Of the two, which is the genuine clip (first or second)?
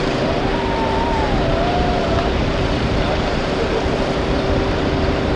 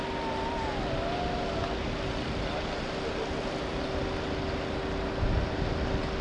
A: second